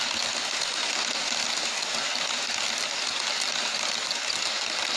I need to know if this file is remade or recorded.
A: recorded